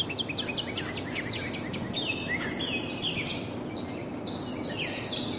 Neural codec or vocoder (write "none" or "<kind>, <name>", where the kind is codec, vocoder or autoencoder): none